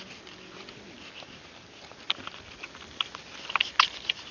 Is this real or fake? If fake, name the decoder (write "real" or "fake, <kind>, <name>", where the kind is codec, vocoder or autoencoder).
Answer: real